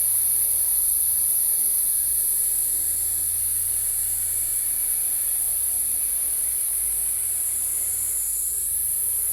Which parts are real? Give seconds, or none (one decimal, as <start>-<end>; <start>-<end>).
0.0-4.5; 6.1-9.3